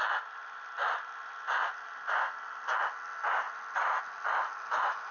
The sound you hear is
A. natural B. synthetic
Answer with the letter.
A